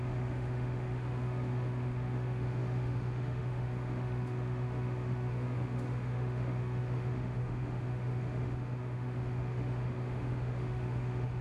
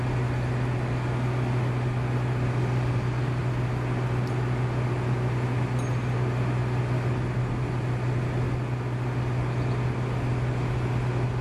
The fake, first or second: first